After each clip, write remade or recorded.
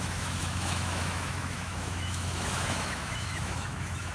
remade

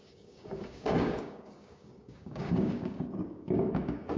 remade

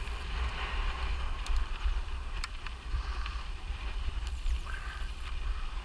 remade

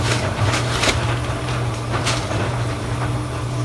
remade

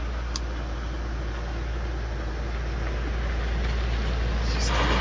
recorded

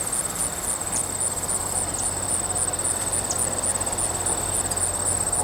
recorded